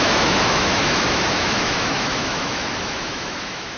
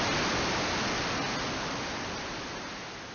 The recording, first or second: second